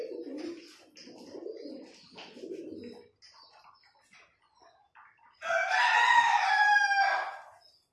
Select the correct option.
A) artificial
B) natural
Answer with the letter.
B